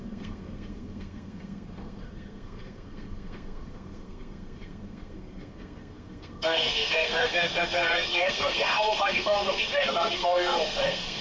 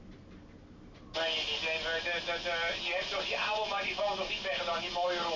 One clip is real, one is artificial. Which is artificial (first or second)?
first